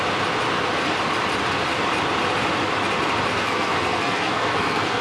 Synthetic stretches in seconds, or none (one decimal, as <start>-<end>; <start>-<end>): 3.3-5.0